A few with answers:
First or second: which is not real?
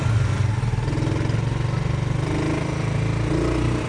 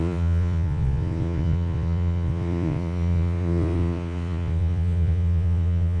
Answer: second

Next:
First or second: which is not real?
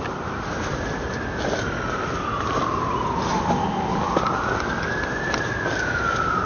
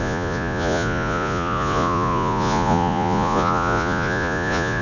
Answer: second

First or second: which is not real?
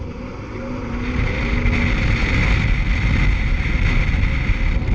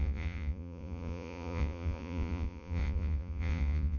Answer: second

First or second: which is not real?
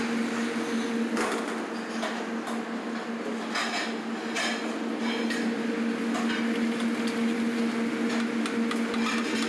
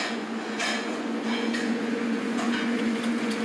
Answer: second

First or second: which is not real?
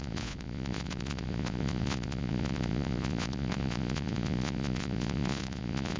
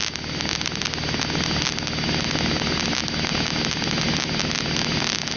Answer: first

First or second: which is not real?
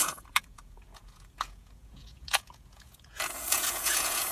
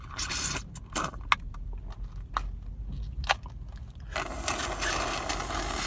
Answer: first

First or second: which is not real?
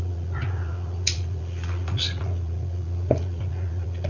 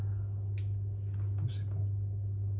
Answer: first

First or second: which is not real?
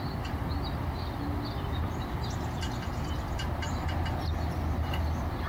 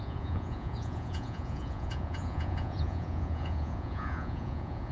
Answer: second